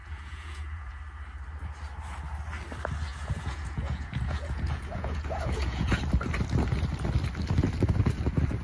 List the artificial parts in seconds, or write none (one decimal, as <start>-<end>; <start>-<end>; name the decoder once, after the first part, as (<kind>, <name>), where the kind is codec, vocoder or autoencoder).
0.0-1.0 (vocoder, Vocos); 3.1-6.0